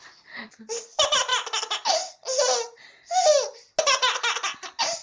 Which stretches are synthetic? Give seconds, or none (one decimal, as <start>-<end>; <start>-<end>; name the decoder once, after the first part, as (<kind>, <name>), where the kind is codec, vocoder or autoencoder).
none